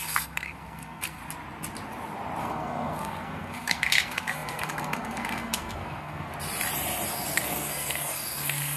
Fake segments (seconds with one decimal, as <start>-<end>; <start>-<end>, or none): 0.0-1.2; 2.4-6.3; 7.1-8.8